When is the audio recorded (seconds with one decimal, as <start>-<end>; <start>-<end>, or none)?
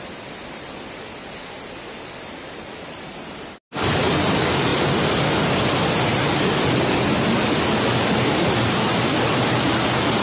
0.0-10.2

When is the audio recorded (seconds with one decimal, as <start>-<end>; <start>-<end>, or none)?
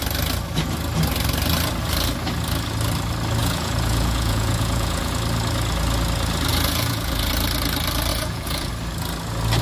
0.0-3.4; 5.1-6.5; 7.3-8.1; 8.7-9.6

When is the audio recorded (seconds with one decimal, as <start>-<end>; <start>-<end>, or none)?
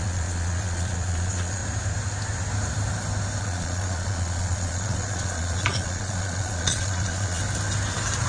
1.6-3.4; 7.4-8.3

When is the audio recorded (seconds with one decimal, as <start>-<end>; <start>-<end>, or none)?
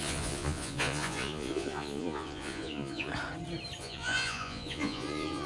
3.1-3.8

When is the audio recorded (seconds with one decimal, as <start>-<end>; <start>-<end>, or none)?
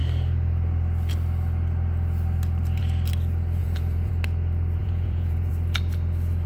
0.0-3.6; 4.1-4.8; 5.5-6.5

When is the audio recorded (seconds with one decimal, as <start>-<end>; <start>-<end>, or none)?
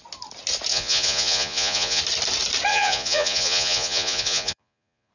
0.0-0.7; 2.0-2.7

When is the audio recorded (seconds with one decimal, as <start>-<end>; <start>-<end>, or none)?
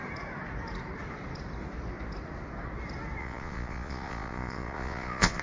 0.0-3.2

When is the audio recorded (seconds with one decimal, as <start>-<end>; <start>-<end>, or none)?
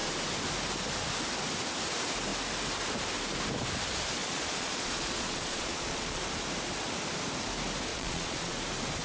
0.0-4.2; 6.2-7.9; 8.6-9.0